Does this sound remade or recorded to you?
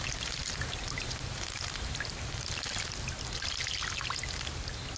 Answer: recorded